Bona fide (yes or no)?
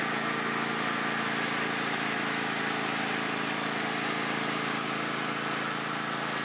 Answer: yes